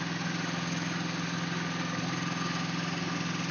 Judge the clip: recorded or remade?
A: recorded